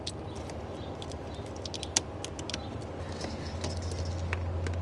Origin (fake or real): real